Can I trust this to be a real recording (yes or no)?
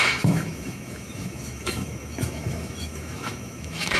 no